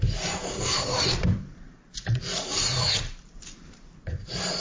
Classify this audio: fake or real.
fake